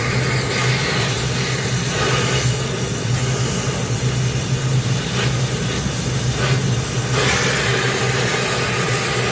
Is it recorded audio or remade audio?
recorded